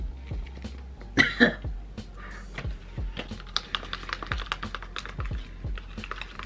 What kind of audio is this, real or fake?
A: real